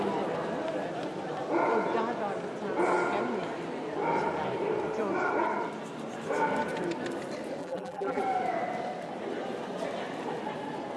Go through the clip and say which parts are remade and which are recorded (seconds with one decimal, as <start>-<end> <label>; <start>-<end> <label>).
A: 0.0-7.6 recorded; 7.6-8.2 remade; 8.2-11.0 recorded